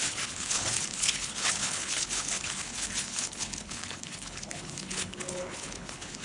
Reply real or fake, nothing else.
fake